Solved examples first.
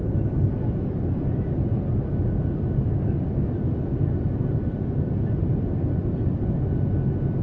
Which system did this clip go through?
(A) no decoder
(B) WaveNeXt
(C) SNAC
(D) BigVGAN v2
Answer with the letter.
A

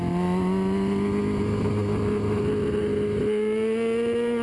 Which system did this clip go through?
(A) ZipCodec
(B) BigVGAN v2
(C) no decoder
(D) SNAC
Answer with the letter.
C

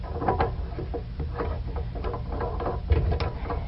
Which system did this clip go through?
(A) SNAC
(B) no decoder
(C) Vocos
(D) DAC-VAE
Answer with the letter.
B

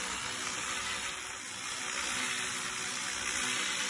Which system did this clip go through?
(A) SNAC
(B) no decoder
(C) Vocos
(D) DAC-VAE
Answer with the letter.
B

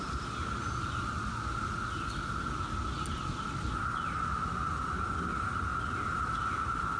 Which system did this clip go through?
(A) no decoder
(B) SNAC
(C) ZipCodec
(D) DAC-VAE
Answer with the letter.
A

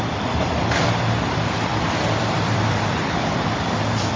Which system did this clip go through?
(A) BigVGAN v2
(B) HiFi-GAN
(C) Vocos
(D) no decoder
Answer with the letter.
A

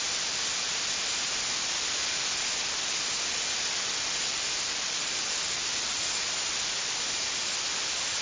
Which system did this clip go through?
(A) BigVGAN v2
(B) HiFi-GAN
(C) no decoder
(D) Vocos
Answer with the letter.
C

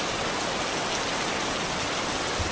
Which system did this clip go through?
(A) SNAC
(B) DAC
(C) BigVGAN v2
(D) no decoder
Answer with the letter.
D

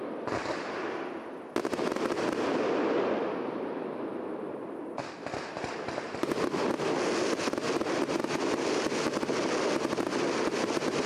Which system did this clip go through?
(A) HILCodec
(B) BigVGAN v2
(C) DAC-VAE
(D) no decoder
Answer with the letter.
D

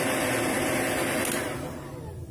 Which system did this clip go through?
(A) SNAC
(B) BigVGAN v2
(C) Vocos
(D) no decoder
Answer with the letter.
D